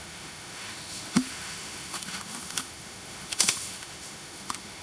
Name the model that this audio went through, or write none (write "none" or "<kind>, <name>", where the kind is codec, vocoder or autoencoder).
autoencoder, DAC-VAE